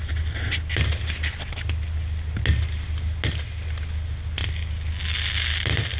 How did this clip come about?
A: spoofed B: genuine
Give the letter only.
B